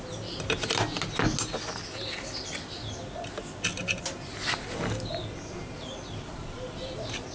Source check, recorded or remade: recorded